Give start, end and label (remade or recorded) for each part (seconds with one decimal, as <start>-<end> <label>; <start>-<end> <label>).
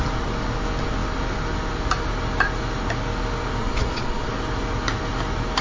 0.0-3.6 recorded; 3.6-4.3 remade; 4.3-5.6 recorded